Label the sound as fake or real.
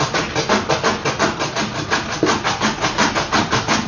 real